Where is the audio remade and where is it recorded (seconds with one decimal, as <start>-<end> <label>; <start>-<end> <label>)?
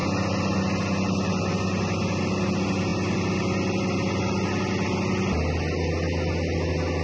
0.0-7.0 recorded